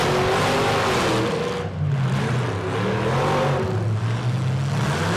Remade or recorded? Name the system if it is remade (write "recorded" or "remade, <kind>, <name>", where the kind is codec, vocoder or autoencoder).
recorded